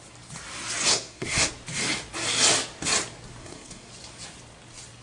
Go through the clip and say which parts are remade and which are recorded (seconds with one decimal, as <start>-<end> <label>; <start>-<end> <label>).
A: 0.0-0.9 recorded; 0.9-1.5 remade; 1.5-3.4 recorded; 3.4-3.9 remade; 3.9-5.0 recorded